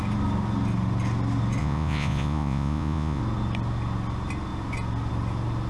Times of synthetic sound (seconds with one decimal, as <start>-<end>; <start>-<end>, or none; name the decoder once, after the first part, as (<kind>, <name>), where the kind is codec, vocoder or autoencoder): 1.6-3.2 (vocoder, Vocos)